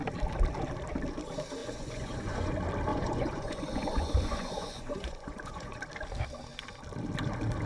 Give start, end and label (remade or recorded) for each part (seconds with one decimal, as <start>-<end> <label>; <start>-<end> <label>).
0.0-1.6 recorded; 1.6-2.5 remade; 2.5-2.9 recorded; 2.9-5.8 remade; 5.8-7.7 recorded